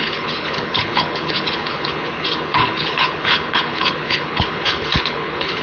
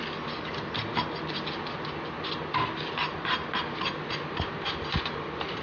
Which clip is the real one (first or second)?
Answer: second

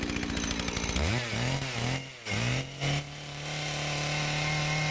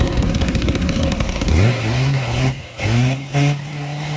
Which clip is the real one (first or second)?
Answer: first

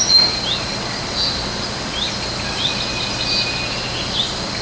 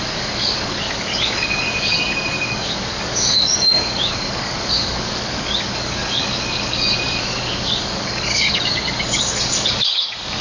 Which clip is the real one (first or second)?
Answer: first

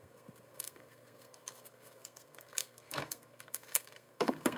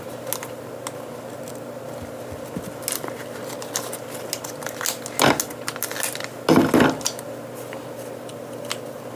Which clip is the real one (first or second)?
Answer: second